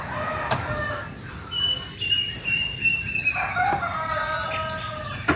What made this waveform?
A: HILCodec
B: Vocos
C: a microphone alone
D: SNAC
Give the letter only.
C